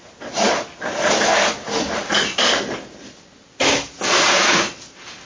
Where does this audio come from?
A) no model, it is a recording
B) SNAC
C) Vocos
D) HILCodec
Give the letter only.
A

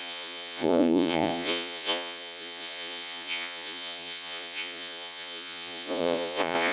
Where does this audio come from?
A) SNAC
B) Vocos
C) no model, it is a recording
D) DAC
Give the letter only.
B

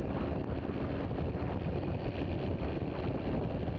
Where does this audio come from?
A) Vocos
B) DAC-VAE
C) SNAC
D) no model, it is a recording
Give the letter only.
D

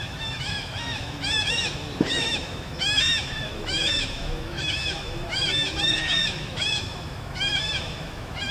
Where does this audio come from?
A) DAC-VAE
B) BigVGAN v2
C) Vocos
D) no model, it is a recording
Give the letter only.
A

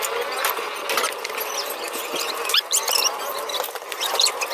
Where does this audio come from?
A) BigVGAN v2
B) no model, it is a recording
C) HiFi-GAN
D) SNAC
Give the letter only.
B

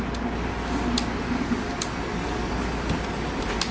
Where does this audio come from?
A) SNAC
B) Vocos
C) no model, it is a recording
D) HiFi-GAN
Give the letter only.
C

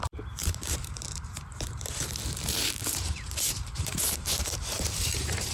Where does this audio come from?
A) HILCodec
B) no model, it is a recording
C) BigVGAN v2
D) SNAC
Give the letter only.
C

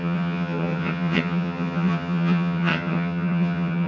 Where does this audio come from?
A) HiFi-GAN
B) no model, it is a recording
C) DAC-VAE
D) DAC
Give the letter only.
A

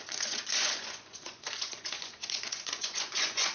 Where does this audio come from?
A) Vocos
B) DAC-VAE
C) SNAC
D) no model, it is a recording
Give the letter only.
A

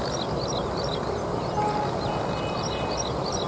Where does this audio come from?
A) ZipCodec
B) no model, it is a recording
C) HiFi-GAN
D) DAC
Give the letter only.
B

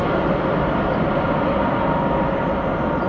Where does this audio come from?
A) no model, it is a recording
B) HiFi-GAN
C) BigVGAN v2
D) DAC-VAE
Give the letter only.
A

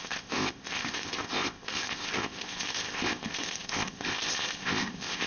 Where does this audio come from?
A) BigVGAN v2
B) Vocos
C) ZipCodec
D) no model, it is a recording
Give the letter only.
C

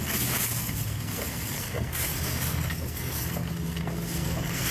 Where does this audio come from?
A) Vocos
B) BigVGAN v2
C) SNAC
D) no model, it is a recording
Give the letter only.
C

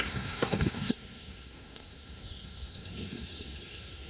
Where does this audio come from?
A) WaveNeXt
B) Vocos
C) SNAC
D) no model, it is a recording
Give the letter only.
C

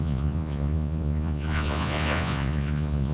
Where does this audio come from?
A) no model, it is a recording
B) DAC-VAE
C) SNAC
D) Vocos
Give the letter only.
D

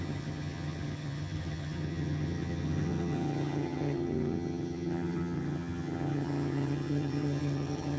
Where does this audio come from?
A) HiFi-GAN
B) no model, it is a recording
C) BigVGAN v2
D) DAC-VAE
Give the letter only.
A